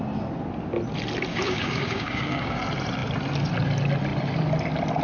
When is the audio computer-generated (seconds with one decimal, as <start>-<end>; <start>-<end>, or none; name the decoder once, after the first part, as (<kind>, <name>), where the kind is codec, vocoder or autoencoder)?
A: 1.3-2.6 (codec, DAC)